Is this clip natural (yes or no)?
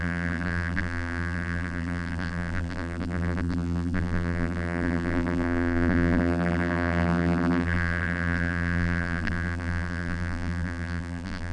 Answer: no